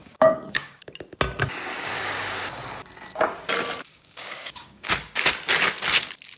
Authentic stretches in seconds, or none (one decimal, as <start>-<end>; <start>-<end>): 0.9-1.7; 2.4-3.9; 4.9-6.4